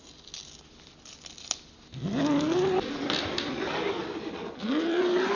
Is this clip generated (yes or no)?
no